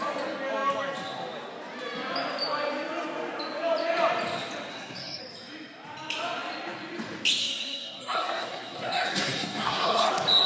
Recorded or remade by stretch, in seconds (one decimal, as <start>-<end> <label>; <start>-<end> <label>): 0.0-4.7 recorded; 4.7-5.2 remade; 5.2-7.4 recorded; 7.4-10.1 remade; 10.1-10.5 recorded